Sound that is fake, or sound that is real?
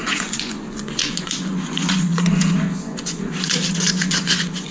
fake